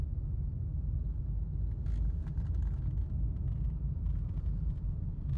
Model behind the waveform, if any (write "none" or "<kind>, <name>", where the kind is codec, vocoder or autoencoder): none